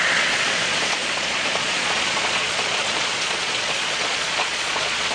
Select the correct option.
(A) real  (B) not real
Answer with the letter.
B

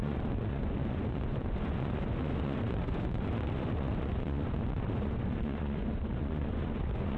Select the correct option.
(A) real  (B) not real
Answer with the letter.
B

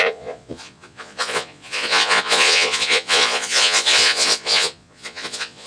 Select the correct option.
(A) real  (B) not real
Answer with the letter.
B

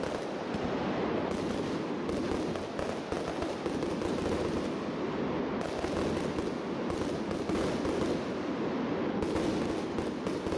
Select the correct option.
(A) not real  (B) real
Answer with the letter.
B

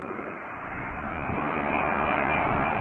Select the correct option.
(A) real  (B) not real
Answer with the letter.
B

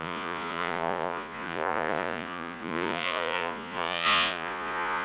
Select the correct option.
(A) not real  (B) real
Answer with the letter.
A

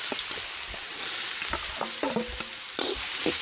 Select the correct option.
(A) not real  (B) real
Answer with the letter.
B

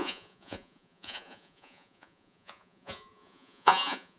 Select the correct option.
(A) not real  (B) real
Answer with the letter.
A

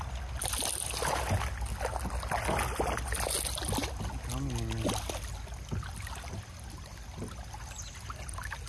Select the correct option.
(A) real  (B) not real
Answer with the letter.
A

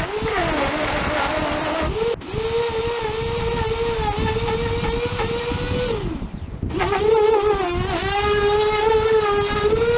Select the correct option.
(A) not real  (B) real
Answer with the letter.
B